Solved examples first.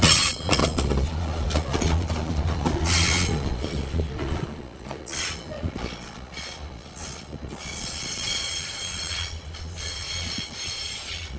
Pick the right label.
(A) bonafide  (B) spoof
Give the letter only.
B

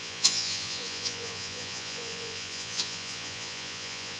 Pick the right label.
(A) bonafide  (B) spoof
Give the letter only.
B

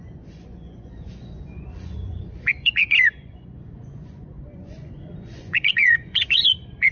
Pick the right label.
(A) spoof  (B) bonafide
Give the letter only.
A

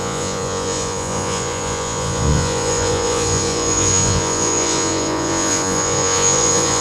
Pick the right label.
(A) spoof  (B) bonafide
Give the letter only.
A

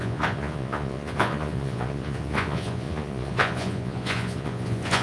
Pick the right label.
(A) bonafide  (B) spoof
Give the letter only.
B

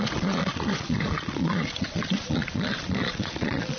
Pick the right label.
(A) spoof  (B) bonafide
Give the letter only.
A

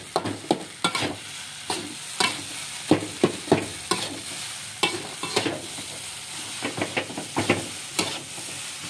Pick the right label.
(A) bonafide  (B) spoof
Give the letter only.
A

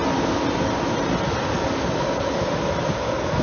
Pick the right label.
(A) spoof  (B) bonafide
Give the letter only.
B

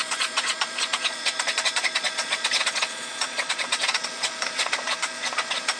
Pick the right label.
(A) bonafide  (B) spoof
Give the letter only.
B